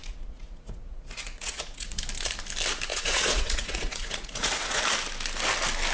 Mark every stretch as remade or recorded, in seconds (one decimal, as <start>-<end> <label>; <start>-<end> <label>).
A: 0.0-2.0 remade; 2.0-2.9 recorded; 2.9-4.8 remade; 4.8-5.9 recorded